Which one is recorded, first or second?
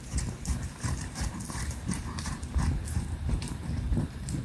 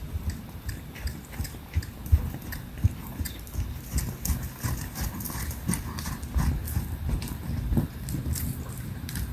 second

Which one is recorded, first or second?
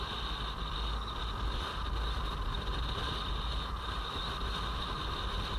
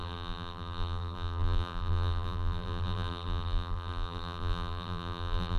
first